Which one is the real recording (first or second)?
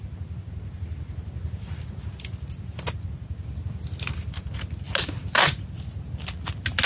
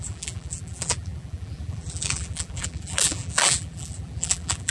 first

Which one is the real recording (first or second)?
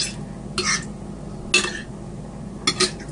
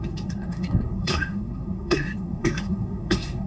first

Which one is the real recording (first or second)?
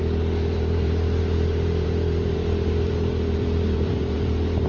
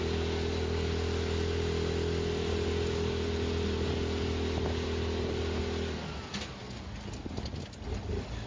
second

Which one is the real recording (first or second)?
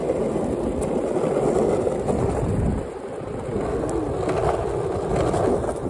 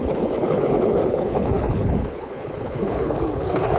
first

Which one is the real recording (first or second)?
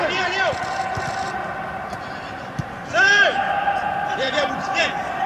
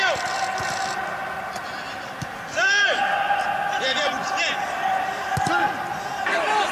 second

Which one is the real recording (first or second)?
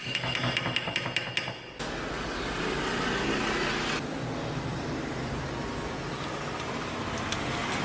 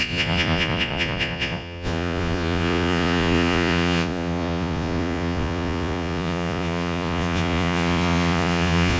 first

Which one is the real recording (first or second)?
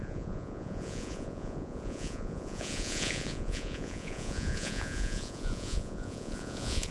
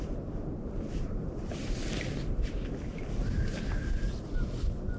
second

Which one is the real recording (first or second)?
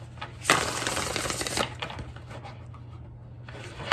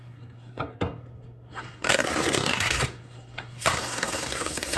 first